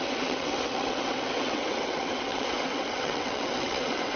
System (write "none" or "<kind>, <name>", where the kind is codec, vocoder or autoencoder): vocoder, WaveNeXt